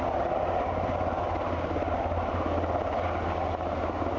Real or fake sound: real